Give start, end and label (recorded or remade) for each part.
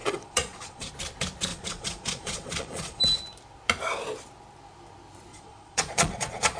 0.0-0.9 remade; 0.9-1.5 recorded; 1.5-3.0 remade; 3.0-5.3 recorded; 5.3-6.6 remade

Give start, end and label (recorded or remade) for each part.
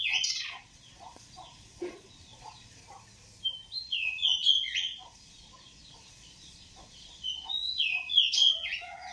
0.0-2.8 remade; 2.8-3.8 recorded; 3.8-9.1 remade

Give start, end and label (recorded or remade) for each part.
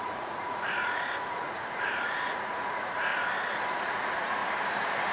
0.0-3.1 remade; 3.1-3.7 recorded; 3.7-4.4 remade; 4.4-5.1 recorded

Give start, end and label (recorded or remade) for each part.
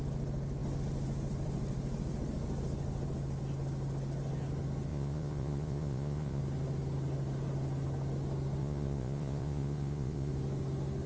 0.0-4.9 recorded; 4.9-6.4 remade; 6.4-8.6 recorded; 8.6-10.3 remade; 10.3-11.1 recorded